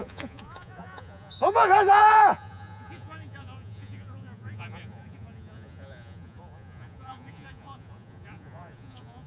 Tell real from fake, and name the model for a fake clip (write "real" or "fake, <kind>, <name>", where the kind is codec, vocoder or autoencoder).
fake, vocoder, Vocos